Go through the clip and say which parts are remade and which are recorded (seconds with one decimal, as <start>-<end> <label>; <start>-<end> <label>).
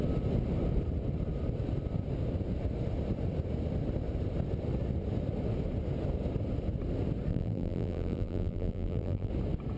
0.0-7.3 recorded; 7.3-9.3 remade; 9.3-9.8 recorded